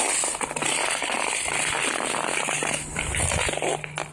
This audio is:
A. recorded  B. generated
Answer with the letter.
A